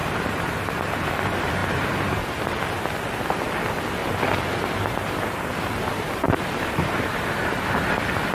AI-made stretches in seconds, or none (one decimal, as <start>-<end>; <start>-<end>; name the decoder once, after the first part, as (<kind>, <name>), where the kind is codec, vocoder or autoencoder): 0.0-1.1 (vocoder, BigVGAN v2); 1.6-2.2; 4.0-7.5